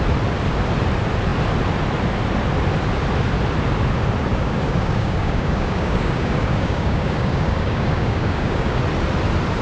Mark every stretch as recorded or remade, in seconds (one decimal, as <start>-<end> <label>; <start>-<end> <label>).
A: 0.0-4.3 recorded; 4.3-8.8 remade; 8.8-9.6 recorded